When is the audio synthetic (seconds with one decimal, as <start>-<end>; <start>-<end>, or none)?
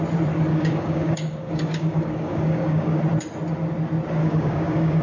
0.5-3.0; 4.2-5.0